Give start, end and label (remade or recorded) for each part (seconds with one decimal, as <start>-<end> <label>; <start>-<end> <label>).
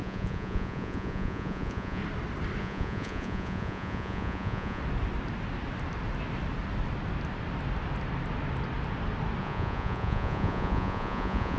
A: 0.0-2.0 remade; 2.0-2.6 recorded; 2.6-4.8 remade; 4.8-9.4 recorded; 9.4-11.6 remade